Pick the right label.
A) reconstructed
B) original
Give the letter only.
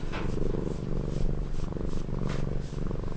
B